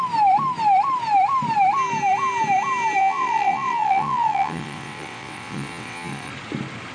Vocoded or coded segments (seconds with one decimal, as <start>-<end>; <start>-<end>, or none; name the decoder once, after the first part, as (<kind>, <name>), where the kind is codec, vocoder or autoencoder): 3.0-6.3 (vocoder, WaveNeXt)